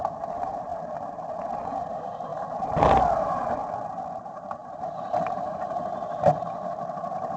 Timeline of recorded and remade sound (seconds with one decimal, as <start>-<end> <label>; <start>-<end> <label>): 0.0-0.7 remade; 0.7-1.8 recorded; 1.8-2.3 remade; 2.3-3.2 recorded; 3.2-3.6 remade; 3.6-4.1 recorded; 4.1-7.4 remade

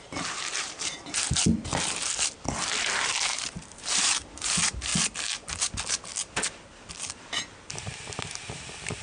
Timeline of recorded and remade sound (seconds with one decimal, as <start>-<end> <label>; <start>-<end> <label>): 0.0-1.4 remade; 1.4-2.8 recorded; 2.8-4.9 remade; 4.9-7.6 recorded; 7.6-9.0 remade

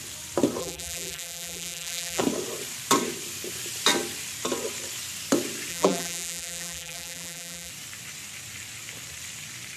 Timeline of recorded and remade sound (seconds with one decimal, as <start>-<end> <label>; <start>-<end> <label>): 0.0-0.6 recorded; 0.6-2.2 remade; 2.2-5.7 recorded; 5.7-7.7 remade; 7.7-9.8 recorded